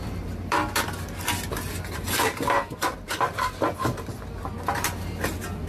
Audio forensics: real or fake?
fake